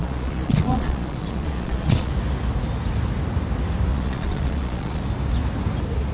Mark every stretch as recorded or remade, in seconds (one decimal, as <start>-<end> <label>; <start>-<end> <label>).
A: 0.0-2.1 remade; 2.1-3.9 recorded; 3.9-5.0 remade; 5.0-6.1 recorded